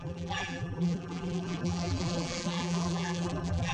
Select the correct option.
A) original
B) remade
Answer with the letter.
B